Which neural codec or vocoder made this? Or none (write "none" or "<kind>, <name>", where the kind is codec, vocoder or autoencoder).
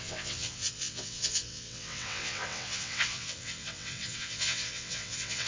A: vocoder, WaveNeXt